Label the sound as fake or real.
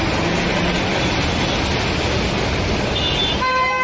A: real